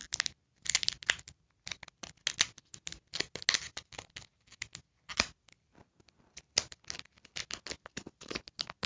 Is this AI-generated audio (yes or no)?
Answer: no